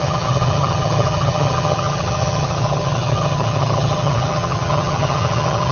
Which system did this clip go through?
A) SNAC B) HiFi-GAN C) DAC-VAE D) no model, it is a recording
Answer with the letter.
B